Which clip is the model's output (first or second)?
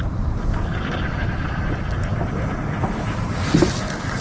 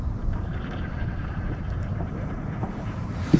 second